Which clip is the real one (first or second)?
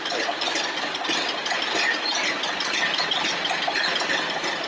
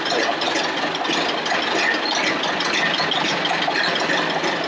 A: second